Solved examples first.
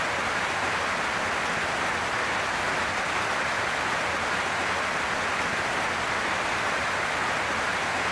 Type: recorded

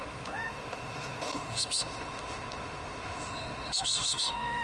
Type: remade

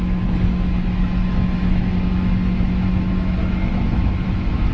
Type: remade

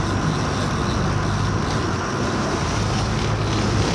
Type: recorded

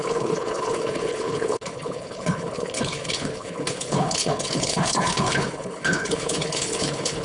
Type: remade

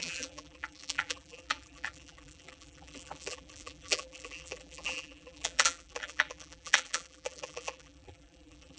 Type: remade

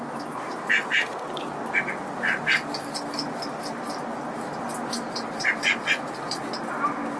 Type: recorded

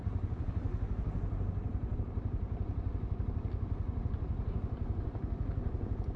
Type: recorded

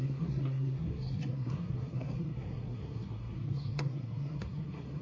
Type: remade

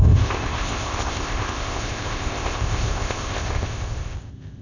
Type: remade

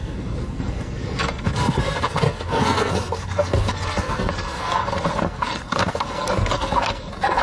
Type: remade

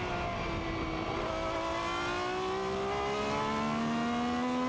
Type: recorded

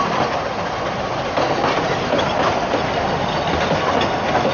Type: recorded